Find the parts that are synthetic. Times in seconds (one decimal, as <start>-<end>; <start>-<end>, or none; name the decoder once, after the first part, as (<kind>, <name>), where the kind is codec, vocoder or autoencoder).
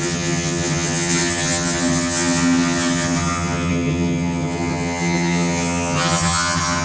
0.0-6.8 (vocoder, HiFi-GAN)